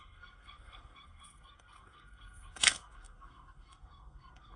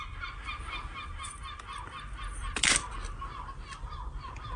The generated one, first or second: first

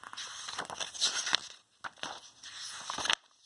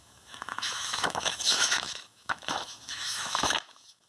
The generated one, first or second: second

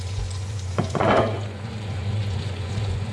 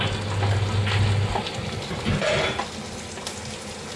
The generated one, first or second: first